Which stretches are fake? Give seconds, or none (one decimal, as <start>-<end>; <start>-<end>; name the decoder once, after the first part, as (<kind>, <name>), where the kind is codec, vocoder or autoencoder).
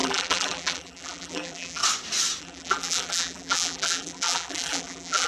0.0-1.8 (vocoder, BigVGAN v2); 2.4-5.3